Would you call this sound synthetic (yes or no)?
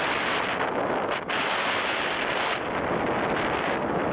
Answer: no